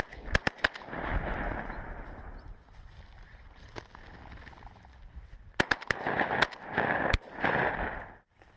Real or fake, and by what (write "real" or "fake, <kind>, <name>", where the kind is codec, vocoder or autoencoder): real